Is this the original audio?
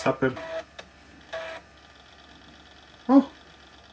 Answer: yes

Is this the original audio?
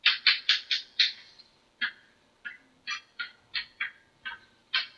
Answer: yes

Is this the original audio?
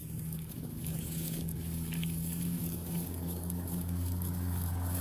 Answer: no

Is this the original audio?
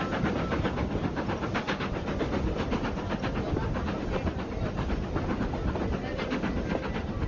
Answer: yes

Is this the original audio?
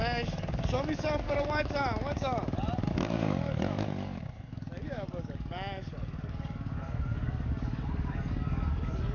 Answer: no